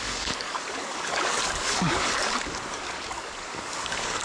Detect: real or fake fake